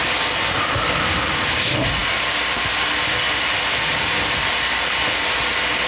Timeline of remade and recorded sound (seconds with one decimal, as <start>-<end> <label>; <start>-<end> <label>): 0.0-5.9 recorded